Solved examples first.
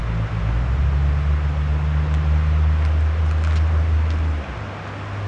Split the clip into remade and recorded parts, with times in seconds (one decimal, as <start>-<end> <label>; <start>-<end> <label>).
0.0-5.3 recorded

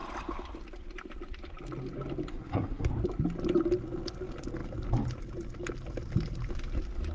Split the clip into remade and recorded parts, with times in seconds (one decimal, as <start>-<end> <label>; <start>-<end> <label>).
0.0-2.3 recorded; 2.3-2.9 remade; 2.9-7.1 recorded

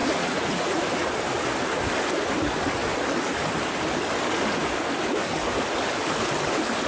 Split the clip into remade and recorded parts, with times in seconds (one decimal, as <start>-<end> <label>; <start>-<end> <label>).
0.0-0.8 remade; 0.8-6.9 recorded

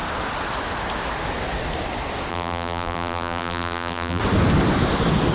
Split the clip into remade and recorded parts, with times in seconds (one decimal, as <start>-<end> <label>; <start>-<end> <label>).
0.0-2.3 recorded; 2.3-4.2 remade; 4.2-5.3 recorded

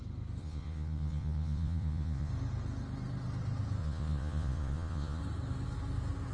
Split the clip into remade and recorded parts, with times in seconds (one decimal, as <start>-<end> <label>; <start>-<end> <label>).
0.0-0.4 recorded; 0.4-2.3 remade; 2.3-3.8 recorded; 3.8-5.2 remade; 5.2-6.3 recorded